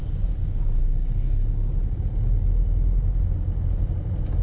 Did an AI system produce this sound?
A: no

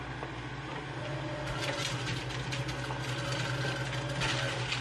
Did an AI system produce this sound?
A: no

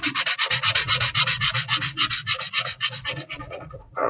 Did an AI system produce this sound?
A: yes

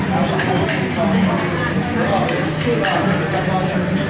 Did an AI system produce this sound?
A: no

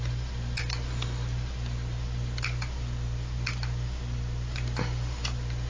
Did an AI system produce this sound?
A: no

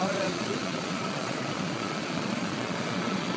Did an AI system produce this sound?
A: yes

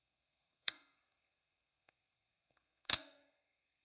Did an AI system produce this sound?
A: yes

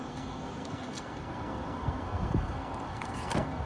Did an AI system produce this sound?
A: yes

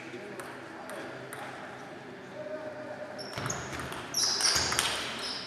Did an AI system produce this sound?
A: no